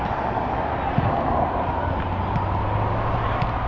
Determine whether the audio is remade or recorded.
recorded